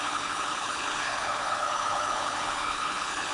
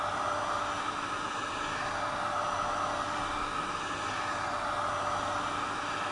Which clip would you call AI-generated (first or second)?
first